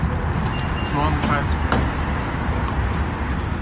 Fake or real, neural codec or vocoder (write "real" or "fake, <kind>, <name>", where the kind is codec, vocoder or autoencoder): real